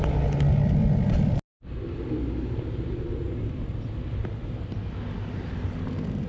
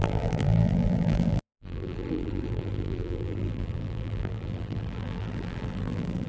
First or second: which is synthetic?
second